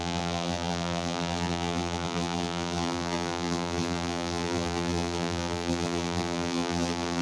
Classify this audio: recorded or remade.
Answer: remade